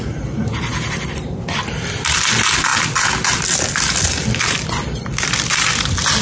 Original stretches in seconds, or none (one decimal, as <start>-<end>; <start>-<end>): none